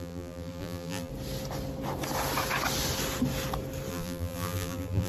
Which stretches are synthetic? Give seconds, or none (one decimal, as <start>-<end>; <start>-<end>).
0.0-1.1; 3.9-5.1